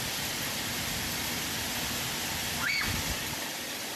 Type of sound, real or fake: real